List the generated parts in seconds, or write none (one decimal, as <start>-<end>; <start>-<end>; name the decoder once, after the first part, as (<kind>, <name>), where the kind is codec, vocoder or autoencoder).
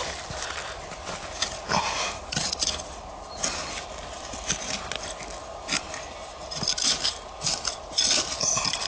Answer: none